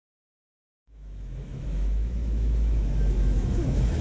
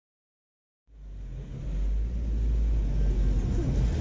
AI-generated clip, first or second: first